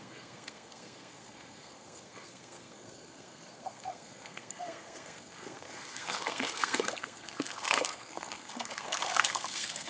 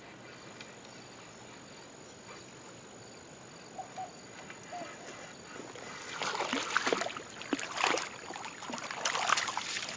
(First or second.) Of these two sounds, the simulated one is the first